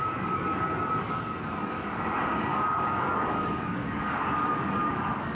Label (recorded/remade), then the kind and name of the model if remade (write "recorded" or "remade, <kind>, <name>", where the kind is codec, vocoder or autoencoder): remade, codec, DAC